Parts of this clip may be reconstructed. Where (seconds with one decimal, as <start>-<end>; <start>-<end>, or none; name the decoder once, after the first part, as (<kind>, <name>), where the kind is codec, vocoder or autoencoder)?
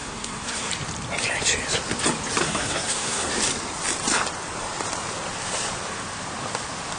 0.0-0.7 (codec, SNAC); 2.4-3.3